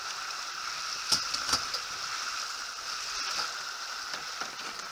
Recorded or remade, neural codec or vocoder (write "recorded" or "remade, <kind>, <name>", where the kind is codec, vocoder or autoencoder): recorded